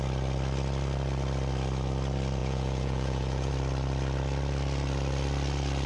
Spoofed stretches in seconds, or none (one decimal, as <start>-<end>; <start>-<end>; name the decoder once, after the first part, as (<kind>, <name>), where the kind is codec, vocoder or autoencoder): 2.4-3.5 (vocoder, Vocos)